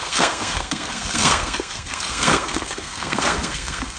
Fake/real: fake